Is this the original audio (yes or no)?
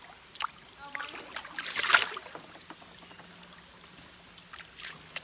yes